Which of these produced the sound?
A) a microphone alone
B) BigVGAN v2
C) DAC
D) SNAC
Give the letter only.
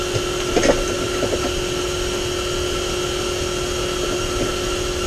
A